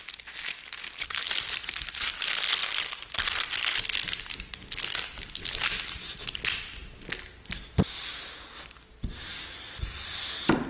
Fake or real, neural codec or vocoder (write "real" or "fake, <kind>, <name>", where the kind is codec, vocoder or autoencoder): real